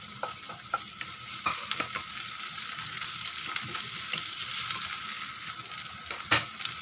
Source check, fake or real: real